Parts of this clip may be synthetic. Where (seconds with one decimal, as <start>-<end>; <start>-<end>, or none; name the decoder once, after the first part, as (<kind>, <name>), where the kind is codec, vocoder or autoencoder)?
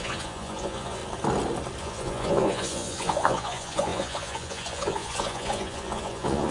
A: 0.0-1.0 (vocoder, Vocos); 1.8-6.5